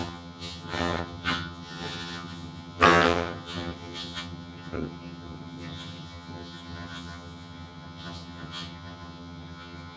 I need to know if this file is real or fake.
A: fake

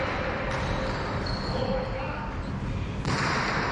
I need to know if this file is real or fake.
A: real